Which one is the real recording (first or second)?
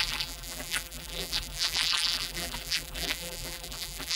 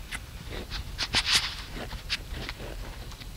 second